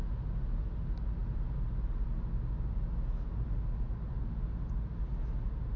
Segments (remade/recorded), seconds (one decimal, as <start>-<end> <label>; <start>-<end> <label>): 0.0-5.8 recorded